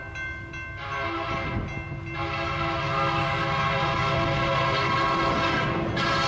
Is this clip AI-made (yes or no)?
no